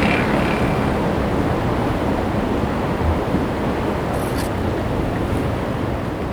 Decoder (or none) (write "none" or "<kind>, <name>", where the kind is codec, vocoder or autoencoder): none